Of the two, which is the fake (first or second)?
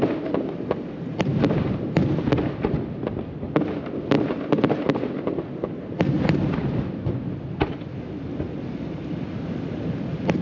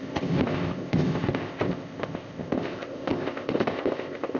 second